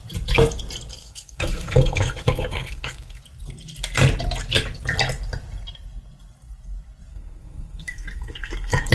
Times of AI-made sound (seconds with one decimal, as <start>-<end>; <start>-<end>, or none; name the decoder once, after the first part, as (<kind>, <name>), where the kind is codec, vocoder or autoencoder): 1.0-3.2 (codec, SNAC); 7.1-8.9